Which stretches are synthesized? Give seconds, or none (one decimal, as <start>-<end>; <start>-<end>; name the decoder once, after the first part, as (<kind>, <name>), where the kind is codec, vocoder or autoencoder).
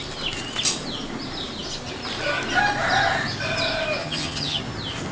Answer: 4.0-4.6 (vocoder, HiFi-GAN)